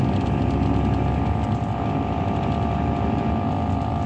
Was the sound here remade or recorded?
recorded